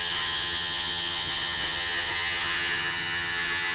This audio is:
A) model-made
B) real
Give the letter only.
A